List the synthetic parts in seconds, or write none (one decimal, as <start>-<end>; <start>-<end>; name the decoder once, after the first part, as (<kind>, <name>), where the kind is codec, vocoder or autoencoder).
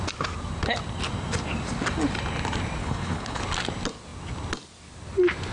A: 2.8-3.4 (codec, HILCodec)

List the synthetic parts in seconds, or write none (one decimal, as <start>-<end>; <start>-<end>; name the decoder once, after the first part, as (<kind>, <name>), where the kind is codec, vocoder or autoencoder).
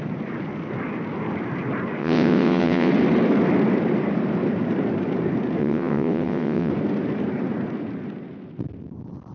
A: 2.0-2.9 (vocoder, WaveNeXt); 5.6-6.7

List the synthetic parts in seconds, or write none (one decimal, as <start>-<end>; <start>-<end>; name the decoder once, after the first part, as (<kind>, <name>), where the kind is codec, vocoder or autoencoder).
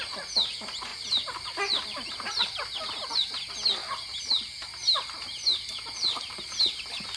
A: none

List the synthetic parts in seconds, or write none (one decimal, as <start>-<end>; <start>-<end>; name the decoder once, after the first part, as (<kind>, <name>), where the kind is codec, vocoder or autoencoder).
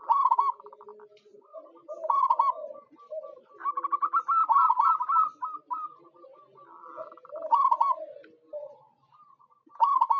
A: 4.4-6.0 (vocoder, BigVGAN v2)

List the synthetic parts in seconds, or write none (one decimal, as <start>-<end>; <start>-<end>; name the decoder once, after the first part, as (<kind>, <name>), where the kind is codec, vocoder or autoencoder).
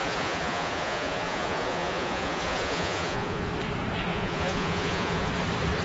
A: 0.0-3.5 (vocoder, Vocos); 4.1-5.3